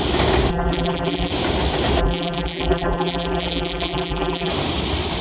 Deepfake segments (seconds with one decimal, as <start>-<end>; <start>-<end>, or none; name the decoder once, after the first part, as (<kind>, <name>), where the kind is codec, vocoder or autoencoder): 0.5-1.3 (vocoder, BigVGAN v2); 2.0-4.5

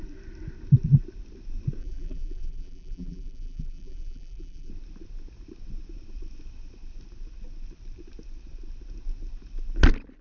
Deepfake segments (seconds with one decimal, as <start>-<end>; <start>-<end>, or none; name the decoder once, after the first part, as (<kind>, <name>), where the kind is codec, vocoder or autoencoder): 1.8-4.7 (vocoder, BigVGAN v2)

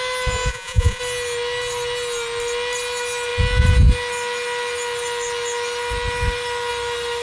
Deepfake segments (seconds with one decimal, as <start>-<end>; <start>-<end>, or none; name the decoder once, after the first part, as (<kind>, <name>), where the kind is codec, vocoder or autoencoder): 0.5-1.0 (vocoder, Vocos)

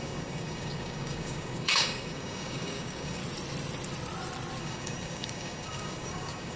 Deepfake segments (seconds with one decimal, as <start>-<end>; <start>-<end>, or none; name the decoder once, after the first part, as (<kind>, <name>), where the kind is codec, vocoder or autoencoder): 0.0-3.2 (codec, DAC); 4.6-6.6

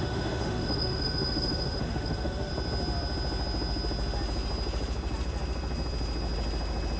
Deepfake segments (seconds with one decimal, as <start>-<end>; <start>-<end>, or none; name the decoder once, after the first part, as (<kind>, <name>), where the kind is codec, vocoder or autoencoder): 0.0-2.5 (autoencoder, DAC-VAE)

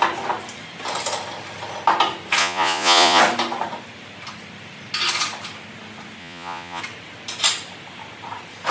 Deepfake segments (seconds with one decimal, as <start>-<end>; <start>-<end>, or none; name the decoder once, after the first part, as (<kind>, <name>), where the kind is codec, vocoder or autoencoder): 2.4-3.2 (vocoder, Vocos); 6.2-6.8